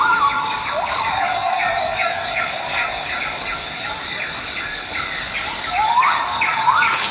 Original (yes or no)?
no